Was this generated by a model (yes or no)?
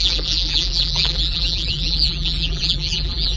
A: yes